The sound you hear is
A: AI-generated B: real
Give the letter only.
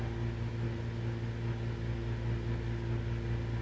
B